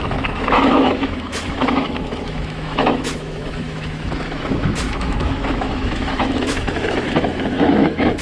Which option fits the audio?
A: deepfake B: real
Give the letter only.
A